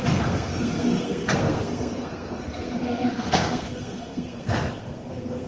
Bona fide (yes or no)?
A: no